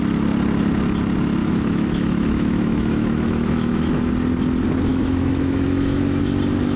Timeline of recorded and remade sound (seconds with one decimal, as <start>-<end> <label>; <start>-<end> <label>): 0.0-1.4 recorded; 1.4-4.1 remade; 4.1-4.9 recorded; 4.9-6.2 remade; 6.2-6.8 recorded